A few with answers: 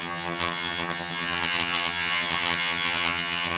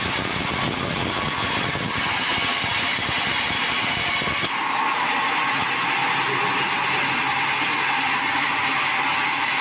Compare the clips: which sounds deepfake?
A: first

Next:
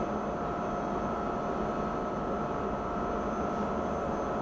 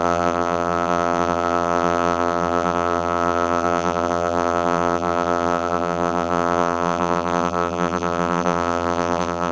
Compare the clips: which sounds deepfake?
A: second